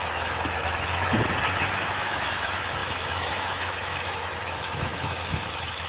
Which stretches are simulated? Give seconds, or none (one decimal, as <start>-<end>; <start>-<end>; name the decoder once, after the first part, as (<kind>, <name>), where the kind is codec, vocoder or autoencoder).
0.0-1.1 (autoencoder, DAC-VAE); 1.7-5.9